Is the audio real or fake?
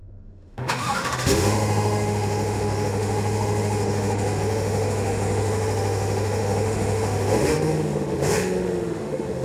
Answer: fake